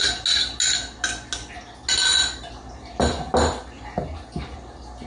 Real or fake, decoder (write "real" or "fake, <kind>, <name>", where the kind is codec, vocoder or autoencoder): real